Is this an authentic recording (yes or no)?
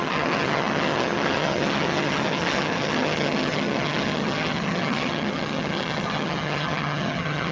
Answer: no